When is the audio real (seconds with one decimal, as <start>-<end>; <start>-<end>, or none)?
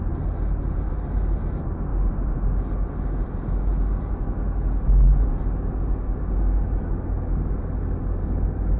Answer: 0.0-1.9; 2.6-8.8